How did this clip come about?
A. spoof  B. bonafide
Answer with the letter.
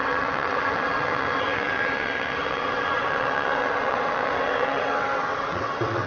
A